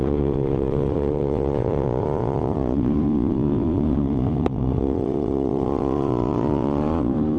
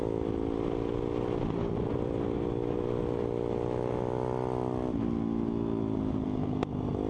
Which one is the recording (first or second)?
second